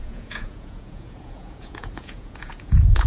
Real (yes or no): no